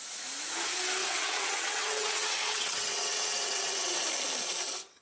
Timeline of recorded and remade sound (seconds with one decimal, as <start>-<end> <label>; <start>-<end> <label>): 0.0-1.0 recorded; 1.0-4.0 remade; 4.0-5.0 recorded